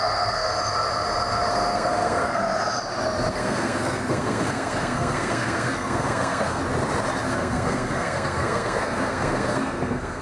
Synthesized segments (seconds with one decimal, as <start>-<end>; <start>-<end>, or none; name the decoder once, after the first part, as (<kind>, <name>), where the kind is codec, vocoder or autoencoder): 0.0-0.5 (codec, SNAC); 1.5-2.4; 3.3-6.6; 7.3-10.2